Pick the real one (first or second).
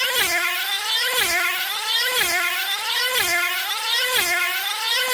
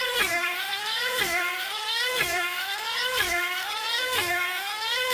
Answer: first